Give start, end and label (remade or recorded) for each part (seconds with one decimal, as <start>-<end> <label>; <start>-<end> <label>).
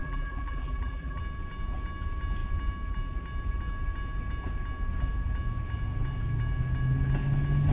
0.0-1.2 remade; 1.2-7.7 recorded